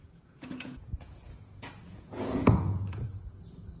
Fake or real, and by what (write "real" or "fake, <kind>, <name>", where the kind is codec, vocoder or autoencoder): fake, vocoder, Vocos